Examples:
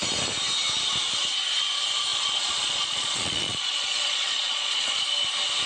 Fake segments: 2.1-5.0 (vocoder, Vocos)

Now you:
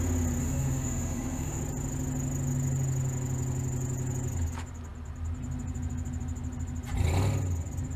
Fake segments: 0.4-1.6 (autoencoder, DAC-VAE)